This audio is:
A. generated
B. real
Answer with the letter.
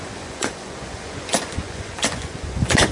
A